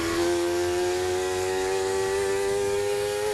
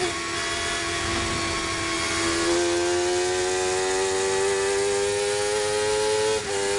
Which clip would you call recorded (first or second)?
second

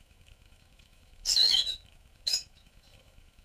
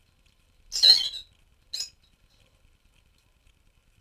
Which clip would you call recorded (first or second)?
second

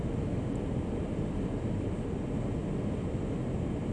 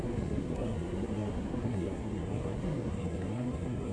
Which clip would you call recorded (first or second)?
first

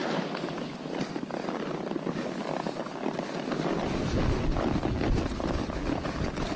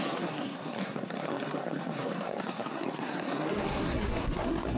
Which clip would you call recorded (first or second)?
first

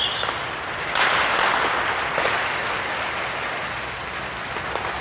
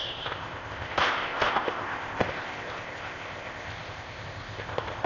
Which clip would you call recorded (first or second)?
first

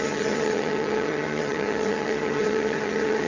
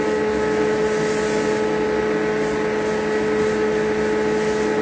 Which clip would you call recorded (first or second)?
second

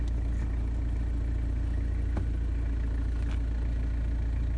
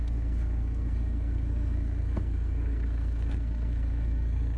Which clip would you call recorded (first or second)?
first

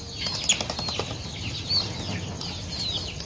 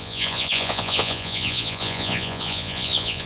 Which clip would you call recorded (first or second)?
first